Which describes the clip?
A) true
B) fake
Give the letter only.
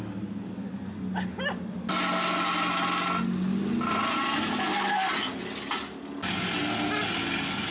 A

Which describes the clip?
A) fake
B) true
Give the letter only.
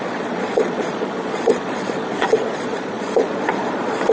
A